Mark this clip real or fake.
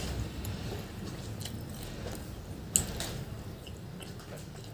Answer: real